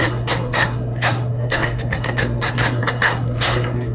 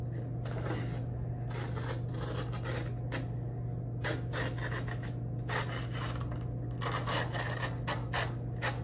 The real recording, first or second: second